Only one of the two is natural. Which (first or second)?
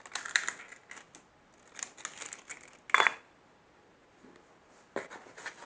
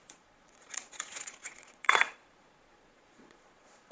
first